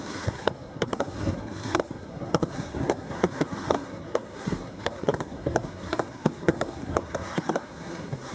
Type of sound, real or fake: fake